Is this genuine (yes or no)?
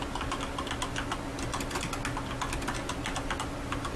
yes